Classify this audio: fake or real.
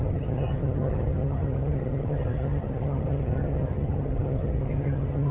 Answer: fake